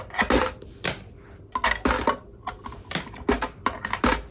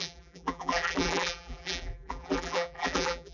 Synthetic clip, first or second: second